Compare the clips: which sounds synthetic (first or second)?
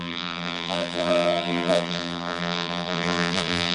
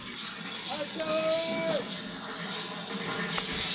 first